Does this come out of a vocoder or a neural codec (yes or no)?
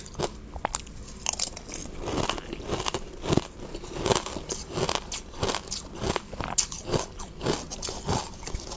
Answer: no